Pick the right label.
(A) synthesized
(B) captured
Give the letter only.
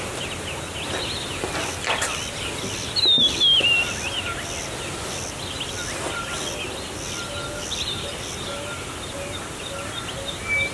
B